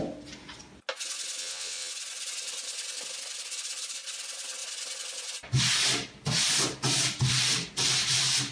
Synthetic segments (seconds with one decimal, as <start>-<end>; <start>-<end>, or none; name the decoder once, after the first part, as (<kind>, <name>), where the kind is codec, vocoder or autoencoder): 1.4-1.9 (vocoder, WaveNeXt)